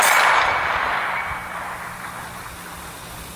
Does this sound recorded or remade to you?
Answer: recorded